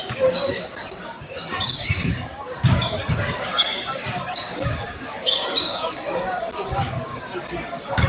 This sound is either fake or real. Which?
fake